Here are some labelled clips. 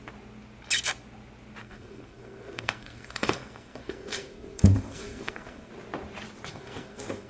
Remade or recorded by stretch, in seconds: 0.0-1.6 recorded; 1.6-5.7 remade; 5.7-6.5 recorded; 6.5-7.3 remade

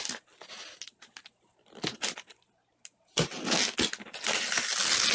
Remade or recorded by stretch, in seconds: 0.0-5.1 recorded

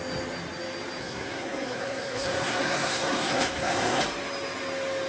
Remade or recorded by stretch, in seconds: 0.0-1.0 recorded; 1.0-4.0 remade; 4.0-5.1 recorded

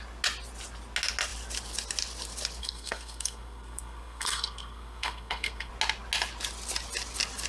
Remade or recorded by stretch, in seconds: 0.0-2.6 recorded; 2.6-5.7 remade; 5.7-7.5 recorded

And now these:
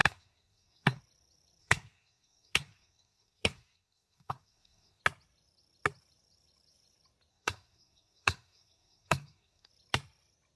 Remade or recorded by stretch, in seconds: 0.0-1.0 remade; 1.0-1.6 recorded; 1.6-5.0 remade; 5.0-7.3 recorded; 7.3-9.7 remade; 9.7-10.6 recorded